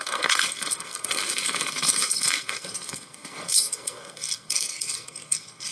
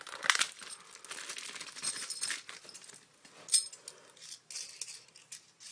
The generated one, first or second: first